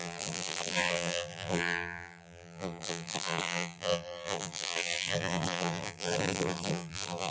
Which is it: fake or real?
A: fake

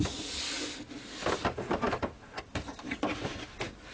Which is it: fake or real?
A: real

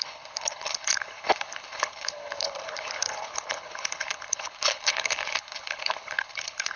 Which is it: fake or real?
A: fake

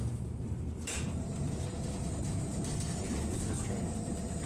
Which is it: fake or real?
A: fake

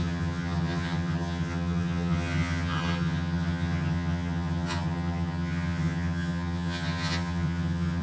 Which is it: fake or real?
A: fake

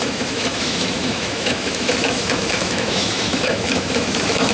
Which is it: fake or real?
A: fake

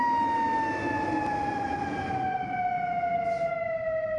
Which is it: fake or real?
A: real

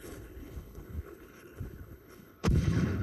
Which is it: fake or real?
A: fake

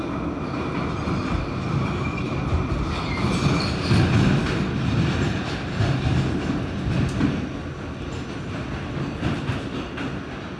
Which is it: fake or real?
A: real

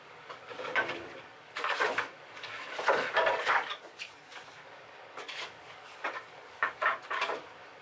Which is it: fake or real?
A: fake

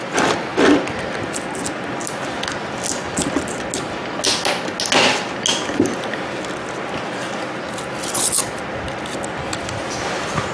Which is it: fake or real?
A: real